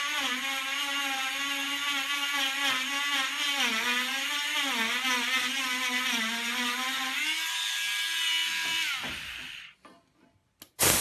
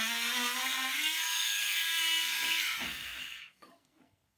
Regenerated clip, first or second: second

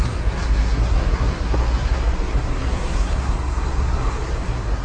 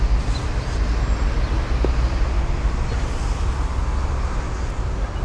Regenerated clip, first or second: first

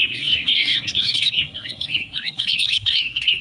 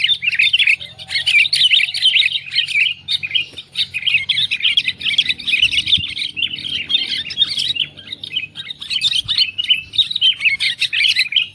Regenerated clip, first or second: first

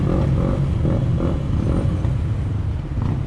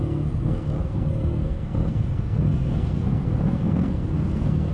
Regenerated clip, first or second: second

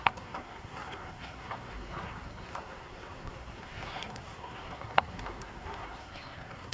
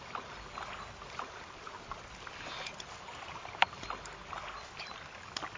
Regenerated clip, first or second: first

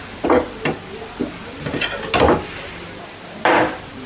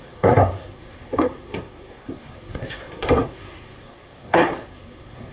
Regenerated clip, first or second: second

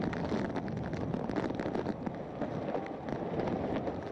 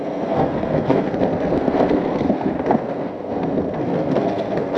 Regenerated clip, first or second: second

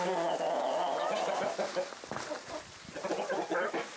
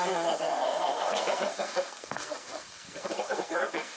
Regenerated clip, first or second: second